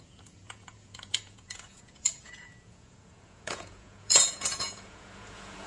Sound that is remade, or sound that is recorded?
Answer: remade